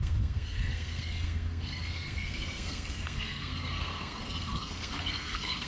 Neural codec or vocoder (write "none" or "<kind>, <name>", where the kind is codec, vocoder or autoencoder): codec, SNAC